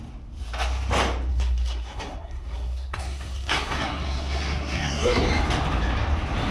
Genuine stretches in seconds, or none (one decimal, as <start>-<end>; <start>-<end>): 0.0-1.3; 5.2-6.5